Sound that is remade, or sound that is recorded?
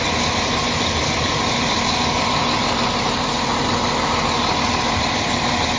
recorded